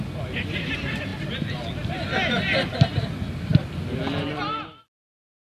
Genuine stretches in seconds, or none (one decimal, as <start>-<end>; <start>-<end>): 0.0-5.5